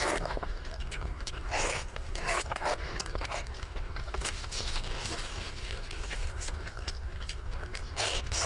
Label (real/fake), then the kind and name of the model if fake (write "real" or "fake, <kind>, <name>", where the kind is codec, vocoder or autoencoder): fake, codec, DAC